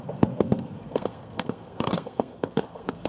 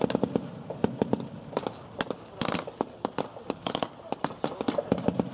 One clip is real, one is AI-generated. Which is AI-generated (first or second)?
first